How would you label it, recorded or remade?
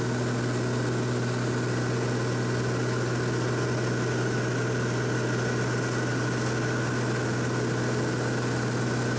recorded